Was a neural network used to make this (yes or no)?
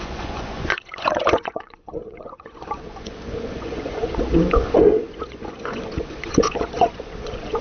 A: yes